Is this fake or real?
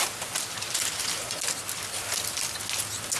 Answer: real